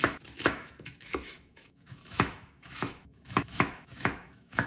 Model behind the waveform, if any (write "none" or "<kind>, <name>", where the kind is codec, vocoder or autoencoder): autoencoder, DAC-VAE